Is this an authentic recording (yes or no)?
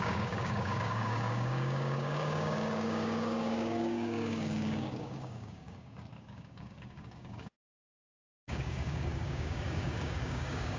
no